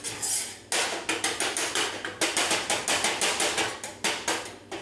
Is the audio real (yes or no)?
yes